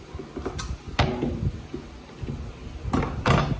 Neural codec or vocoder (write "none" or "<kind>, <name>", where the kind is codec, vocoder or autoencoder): none